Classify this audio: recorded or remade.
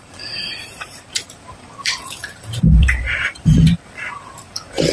remade